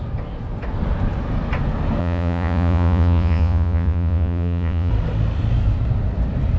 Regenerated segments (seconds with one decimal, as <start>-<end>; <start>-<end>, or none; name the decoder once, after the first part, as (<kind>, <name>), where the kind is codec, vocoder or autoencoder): 2.0-4.9 (vocoder, Vocos)